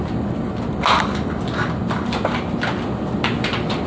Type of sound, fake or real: real